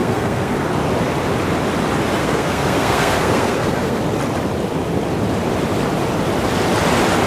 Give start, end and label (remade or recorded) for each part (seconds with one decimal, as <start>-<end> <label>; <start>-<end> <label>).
0.0-0.5 remade; 0.5-2.2 recorded; 2.2-4.0 remade; 4.0-7.3 recorded